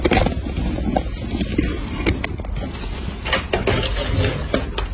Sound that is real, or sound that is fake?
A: real